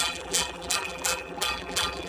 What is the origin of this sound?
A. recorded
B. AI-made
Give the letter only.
B